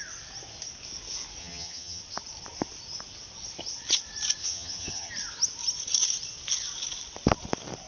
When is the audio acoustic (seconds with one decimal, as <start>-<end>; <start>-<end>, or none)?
0.0-1.4; 2.0-4.4; 5.1-7.9